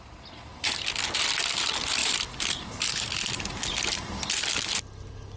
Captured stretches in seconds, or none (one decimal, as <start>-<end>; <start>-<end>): 0.0-5.4